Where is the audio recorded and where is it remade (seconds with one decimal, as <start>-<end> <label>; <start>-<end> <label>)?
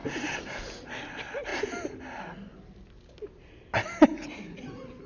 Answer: 0.0-5.1 recorded